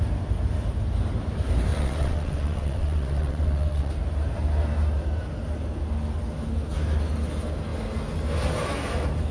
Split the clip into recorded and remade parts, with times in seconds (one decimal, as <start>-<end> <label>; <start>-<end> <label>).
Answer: 0.0-1.7 recorded; 1.7-3.9 remade; 3.9-9.3 recorded